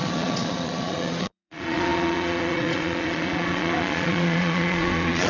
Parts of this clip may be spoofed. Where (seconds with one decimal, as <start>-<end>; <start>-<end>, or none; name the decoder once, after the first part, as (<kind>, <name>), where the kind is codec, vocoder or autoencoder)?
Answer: 0.0-5.3 (vocoder, Vocos)